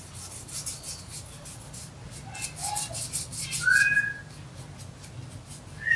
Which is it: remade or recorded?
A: recorded